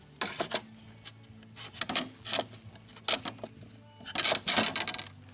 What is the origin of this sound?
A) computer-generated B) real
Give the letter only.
B